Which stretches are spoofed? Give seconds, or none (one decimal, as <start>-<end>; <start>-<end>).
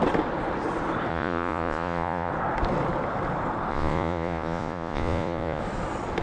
1.1-2.3; 3.7-5.6